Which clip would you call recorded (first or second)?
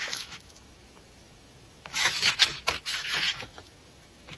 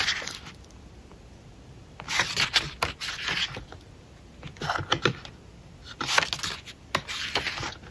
second